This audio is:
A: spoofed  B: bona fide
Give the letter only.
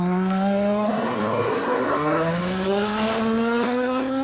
A